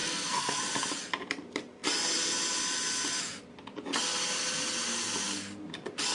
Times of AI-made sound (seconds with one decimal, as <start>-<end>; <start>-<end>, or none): 0.0-0.6